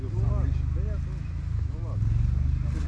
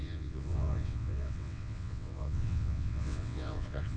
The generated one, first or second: second